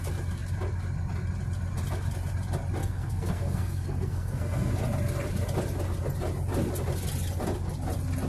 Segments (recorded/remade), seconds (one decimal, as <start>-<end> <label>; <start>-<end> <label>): 0.0-2.8 recorded; 2.8-4.7 remade; 4.7-8.3 recorded